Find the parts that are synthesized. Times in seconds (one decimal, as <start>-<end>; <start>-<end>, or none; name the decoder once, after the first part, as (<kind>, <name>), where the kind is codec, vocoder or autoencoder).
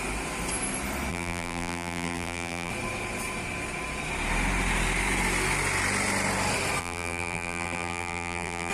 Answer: 1.1-2.7 (vocoder, BigVGAN v2); 6.8-8.7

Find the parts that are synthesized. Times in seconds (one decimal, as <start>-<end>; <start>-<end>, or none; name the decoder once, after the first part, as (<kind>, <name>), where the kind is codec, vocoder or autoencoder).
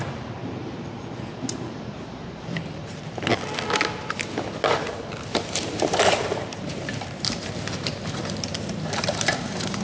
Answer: 0.0-3.3 (vocoder, BigVGAN v2); 4.7-7.9; 8.7-9.8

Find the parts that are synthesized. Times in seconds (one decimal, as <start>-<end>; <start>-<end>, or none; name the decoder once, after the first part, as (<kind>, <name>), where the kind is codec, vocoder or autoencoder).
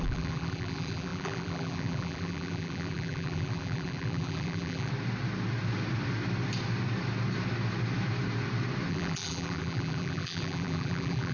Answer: 0.0-4.9 (vocoder, BigVGAN v2); 8.9-11.3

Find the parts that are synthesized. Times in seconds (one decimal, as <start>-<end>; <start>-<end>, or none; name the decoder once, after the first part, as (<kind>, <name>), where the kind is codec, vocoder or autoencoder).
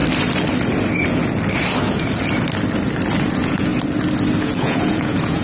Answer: 3.2-3.7 (vocoder, Vocos); 4.4-5.4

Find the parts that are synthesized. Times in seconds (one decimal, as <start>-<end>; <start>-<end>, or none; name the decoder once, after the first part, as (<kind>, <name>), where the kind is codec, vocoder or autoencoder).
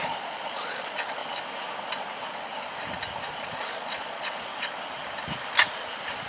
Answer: 0.0-1.2 (vocoder, Vocos); 3.3-4.5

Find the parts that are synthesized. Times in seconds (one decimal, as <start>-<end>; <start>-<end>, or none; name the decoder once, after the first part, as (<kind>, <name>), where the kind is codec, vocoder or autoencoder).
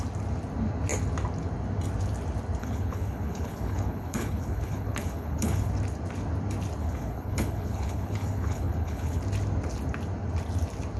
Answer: 2.6-5.7 (codec, HILCodec); 6.8-9.2